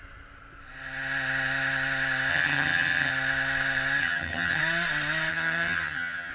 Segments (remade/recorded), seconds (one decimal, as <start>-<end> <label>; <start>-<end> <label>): 0.0-2.3 recorded; 2.3-3.1 remade; 3.1-4.0 recorded; 4.0-4.6 remade; 4.6-5.3 recorded; 5.3-6.3 remade